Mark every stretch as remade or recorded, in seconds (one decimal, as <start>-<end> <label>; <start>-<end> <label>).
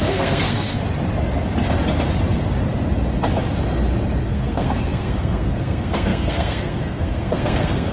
0.0-0.8 remade; 0.8-4.3 recorded; 4.3-7.9 remade